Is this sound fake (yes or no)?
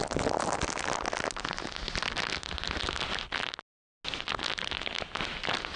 no